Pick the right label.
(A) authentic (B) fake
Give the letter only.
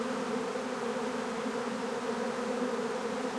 A